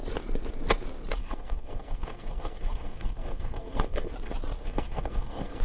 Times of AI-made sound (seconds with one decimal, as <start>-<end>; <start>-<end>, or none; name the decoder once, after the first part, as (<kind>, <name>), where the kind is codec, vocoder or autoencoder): 1.2-4.1 (codec, SNAC); 4.6-5.6